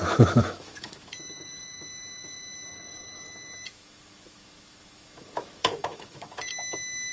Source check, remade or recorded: remade